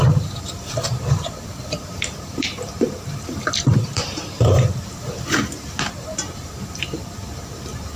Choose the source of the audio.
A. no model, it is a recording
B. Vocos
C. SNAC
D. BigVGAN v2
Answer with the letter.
D